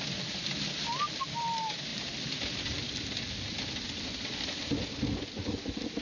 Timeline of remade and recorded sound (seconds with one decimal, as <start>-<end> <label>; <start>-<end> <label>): 0.0-6.0 recorded